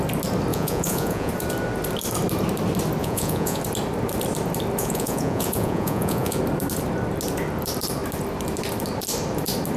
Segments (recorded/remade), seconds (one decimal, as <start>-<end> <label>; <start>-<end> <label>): 0.0-0.5 recorded; 0.5-1.3 remade; 1.3-3.0 recorded; 3.0-3.6 remade; 3.6-4.8 recorded; 4.8-6.4 remade; 6.4-9.8 recorded